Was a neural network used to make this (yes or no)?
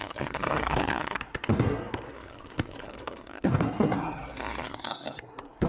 yes